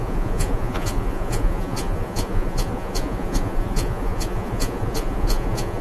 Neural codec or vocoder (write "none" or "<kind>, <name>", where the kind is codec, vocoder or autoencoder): vocoder, Vocos